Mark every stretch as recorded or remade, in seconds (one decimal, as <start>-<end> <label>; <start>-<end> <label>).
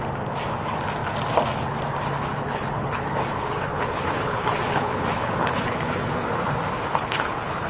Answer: 0.0-2.3 recorded; 2.3-6.3 remade; 6.3-6.9 recorded; 6.9-7.7 remade